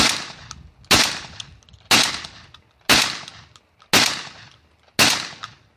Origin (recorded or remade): recorded